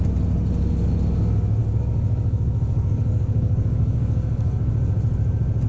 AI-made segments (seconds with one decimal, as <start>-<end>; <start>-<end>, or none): 1.6-4.7